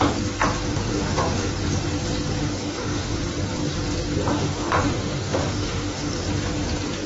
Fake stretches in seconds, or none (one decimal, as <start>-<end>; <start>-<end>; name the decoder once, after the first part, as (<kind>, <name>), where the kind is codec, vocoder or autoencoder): 0.7-1.5 (autoencoder, DAC-VAE); 2.4-3.2; 4.3-6.1